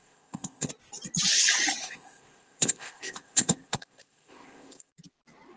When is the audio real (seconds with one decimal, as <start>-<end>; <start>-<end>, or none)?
0.7-1.8; 4.9-5.6

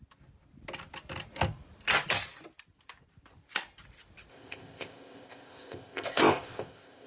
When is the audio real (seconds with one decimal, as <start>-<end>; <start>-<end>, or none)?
0.0-4.3

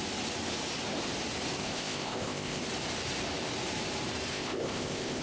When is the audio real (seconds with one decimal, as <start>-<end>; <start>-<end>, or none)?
0.0-1.6; 2.6-4.3

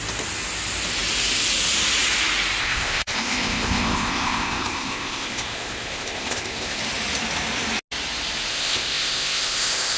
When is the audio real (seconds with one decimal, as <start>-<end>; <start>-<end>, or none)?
0.0-2.6; 6.8-8.5

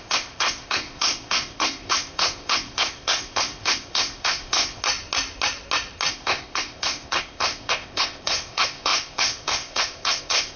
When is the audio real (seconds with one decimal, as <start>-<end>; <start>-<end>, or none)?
4.8-6.1